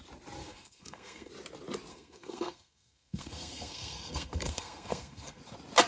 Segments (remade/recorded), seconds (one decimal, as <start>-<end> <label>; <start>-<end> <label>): 0.0-0.4 recorded; 0.4-1.3 remade; 1.3-1.9 recorded; 1.9-5.4 remade; 5.4-5.9 recorded